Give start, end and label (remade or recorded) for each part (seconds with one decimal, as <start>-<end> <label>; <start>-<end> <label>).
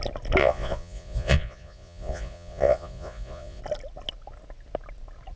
0.0-0.4 recorded; 0.4-3.6 remade; 3.6-5.4 recorded